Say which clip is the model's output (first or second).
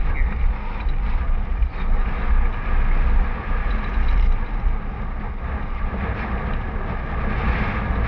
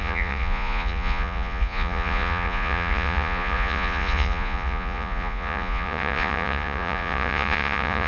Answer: second